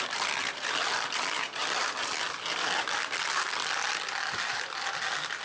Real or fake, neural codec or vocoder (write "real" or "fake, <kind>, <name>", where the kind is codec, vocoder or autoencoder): real